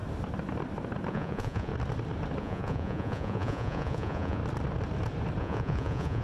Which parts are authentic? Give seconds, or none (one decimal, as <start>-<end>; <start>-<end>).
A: 0.0-1.1; 1.7-2.4; 4.4-5.4